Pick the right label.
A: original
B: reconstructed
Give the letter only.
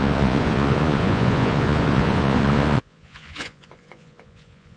B